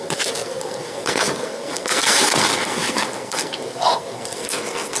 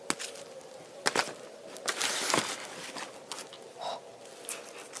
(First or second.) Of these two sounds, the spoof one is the first